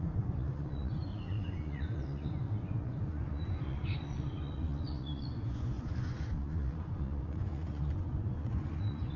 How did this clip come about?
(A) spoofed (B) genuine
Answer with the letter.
A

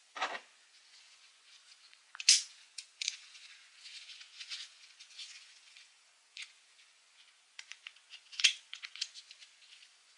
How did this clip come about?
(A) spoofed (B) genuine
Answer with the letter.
A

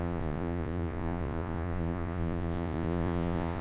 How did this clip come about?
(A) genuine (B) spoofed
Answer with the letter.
B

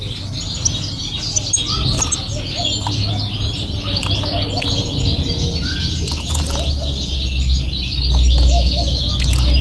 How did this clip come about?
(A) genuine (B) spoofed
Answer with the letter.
A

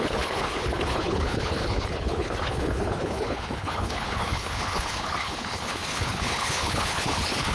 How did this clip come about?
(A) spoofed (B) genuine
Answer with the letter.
A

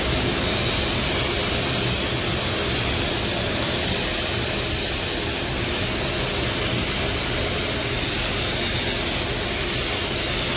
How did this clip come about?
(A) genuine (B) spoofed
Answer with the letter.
A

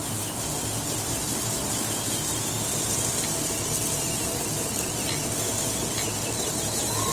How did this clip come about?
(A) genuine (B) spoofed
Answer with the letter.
A